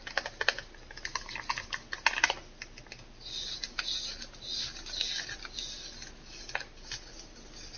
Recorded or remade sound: recorded